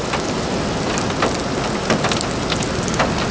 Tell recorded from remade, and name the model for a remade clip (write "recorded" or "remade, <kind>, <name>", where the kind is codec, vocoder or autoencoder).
recorded